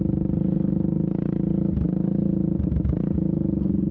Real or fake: real